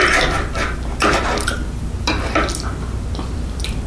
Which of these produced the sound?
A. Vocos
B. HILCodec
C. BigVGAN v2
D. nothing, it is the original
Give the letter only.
D